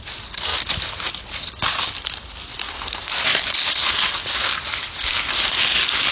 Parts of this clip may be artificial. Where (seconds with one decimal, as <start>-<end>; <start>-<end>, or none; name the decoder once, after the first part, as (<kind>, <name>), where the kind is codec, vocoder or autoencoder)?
none